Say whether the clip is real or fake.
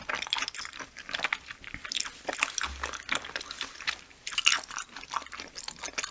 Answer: real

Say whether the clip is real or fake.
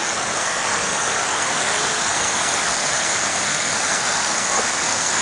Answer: fake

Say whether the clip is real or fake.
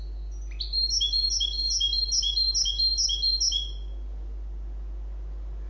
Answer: real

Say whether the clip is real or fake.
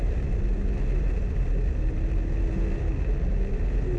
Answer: real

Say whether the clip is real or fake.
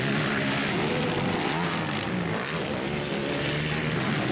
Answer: real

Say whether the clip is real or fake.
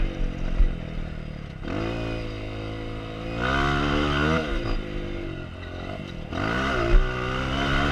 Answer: real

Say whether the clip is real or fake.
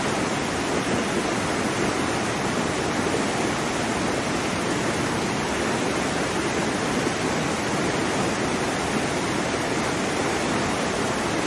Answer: real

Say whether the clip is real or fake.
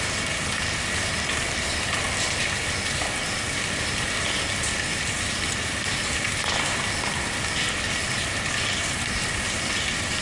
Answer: real